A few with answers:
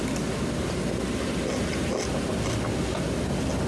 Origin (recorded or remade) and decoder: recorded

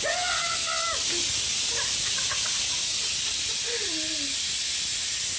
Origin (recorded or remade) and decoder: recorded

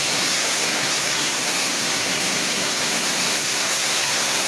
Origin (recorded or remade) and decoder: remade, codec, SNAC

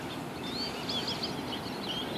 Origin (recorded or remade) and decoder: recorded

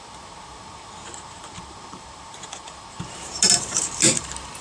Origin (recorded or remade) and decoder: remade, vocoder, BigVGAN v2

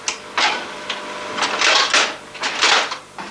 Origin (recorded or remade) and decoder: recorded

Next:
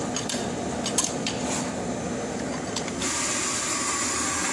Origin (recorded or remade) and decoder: recorded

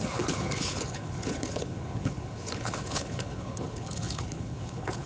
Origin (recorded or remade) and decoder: remade, codec, HILCodec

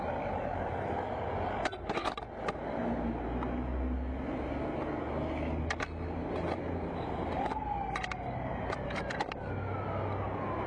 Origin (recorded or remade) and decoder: recorded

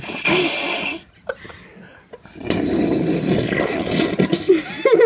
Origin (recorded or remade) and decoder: recorded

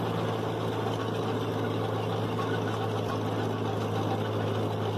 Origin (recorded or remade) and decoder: recorded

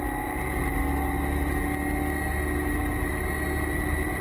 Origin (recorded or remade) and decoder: recorded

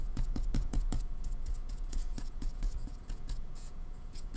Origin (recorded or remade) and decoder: remade, vocoder, Vocos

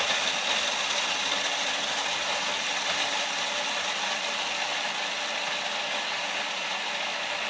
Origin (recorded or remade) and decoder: recorded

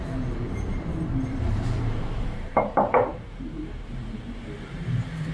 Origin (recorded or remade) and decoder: remade, vocoder, BigVGAN v2